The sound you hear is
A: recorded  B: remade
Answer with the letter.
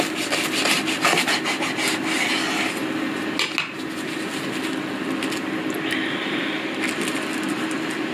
A